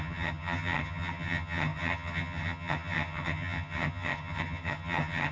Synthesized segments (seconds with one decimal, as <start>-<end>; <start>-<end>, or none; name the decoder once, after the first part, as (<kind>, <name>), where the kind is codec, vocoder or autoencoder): 0.0-5.3 (vocoder, HiFi-GAN)